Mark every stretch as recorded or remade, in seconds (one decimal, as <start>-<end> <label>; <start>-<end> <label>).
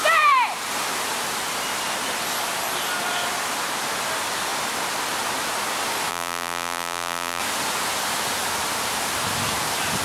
0.0-6.1 recorded; 6.1-7.4 remade; 7.4-10.0 recorded